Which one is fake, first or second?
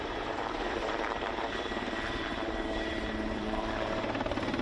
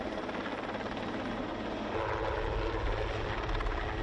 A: first